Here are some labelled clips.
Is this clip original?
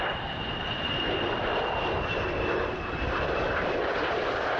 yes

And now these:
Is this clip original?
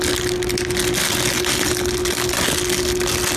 yes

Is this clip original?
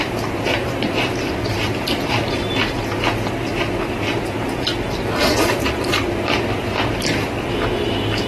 yes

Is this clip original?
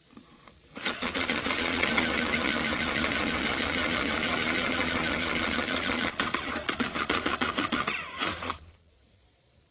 no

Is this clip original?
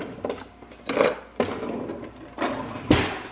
yes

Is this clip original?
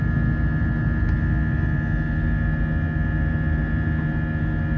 yes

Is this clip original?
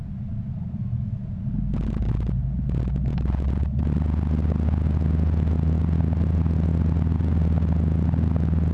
yes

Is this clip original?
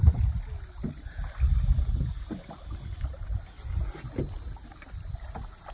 yes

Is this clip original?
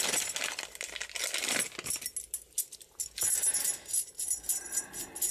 yes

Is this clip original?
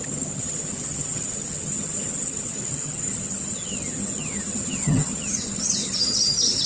no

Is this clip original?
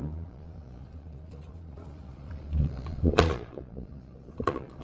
no